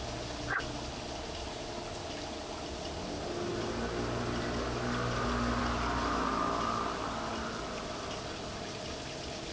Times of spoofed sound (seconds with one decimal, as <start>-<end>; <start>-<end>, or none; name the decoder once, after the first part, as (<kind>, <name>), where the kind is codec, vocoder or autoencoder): none